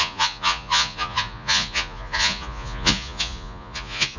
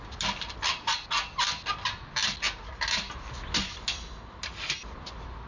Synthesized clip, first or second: first